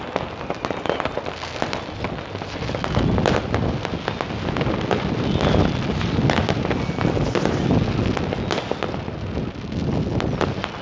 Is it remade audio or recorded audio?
recorded